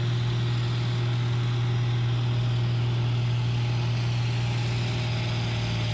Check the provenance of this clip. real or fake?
real